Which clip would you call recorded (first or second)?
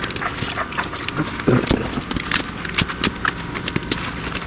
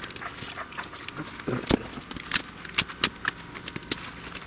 second